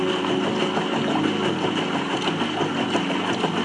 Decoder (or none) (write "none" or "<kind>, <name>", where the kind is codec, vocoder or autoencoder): none